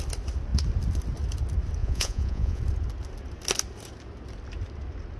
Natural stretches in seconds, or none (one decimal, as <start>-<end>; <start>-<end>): 0.0-1.8; 2.6-5.2